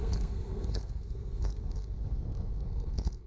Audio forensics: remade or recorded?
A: remade